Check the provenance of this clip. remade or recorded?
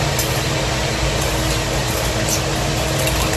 recorded